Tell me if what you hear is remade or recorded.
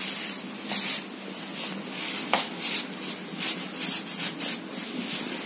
recorded